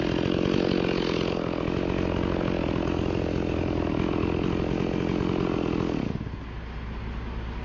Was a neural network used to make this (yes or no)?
no